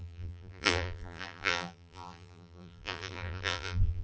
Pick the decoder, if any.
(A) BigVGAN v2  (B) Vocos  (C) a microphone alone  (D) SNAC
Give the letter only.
A